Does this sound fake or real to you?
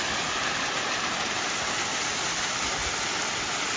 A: real